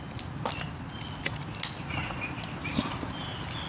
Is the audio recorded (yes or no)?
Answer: yes